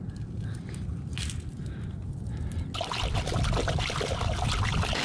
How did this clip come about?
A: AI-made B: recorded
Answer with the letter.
B